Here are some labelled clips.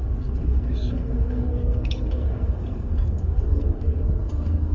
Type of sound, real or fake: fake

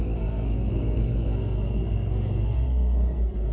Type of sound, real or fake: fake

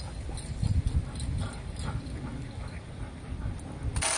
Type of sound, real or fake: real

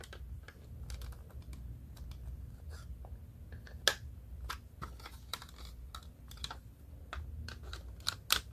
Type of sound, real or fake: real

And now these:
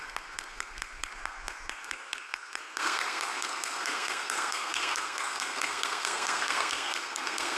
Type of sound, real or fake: fake